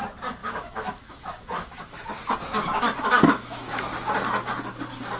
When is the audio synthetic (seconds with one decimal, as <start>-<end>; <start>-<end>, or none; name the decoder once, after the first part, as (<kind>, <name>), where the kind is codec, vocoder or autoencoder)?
0.4-2.1 (autoencoder, DAC-VAE); 2.7-3.8